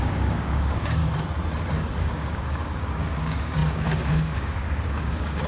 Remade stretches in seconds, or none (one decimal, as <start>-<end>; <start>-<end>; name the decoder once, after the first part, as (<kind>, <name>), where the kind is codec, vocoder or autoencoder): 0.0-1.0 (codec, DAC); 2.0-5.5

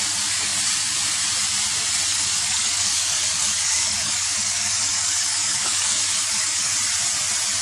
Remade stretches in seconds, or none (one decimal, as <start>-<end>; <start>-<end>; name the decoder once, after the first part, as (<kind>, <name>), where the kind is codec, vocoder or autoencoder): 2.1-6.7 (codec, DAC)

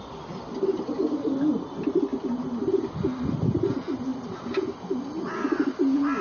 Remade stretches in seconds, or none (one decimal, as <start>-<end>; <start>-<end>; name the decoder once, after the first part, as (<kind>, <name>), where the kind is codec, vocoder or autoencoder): none

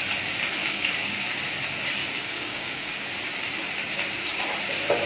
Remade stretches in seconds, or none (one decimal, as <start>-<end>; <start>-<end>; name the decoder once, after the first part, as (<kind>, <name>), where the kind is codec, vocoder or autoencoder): 0.6-1.4 (codec, DAC); 2.0-3.0

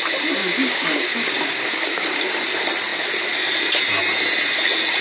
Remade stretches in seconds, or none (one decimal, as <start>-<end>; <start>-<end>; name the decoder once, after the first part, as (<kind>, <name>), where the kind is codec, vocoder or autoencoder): 0.4-2.4 (codec, DAC)

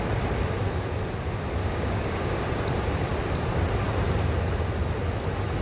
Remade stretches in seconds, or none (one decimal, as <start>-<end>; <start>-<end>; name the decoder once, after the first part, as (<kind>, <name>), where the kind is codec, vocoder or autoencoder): 1.6-2.4 (codec, DAC)